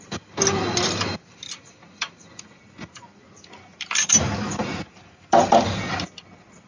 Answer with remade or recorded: recorded